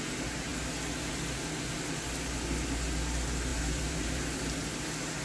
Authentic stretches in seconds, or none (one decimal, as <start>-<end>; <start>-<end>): 0.0-3.5; 4.2-5.2